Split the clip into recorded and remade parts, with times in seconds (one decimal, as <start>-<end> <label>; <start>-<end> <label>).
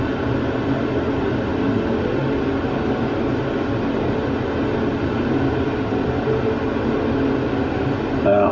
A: 0.0-8.5 recorded